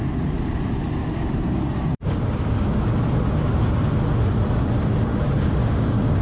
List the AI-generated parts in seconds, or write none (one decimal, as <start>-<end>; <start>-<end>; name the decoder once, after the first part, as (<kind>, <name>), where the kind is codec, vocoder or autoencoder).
1.0-2.8 (codec, DAC); 5.1-6.2